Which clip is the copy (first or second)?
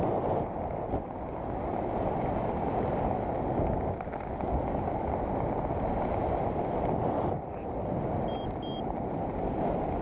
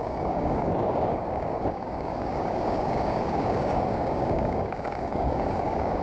second